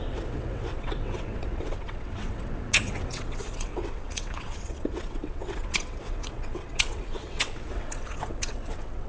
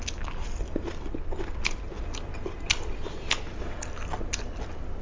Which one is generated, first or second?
first